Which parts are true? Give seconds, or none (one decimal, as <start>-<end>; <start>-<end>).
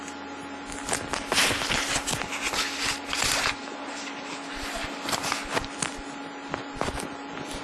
0.0-3.6